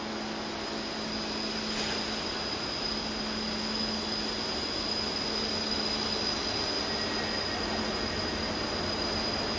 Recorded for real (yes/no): yes